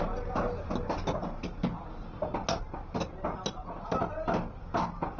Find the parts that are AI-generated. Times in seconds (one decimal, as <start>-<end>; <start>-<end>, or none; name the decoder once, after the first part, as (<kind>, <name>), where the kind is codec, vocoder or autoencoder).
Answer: none